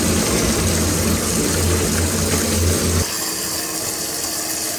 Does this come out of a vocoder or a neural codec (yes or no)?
no